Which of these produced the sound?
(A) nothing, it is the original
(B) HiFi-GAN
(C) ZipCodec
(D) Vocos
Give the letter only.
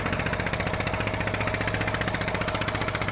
A